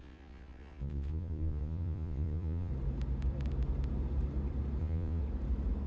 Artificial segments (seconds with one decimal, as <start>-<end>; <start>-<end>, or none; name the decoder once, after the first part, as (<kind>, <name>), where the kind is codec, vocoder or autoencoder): 0.0-2.7 (vocoder, Vocos); 4.8-5.2